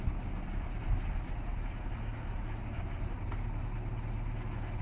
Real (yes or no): yes